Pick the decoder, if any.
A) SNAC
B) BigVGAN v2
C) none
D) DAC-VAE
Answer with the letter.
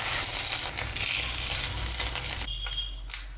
C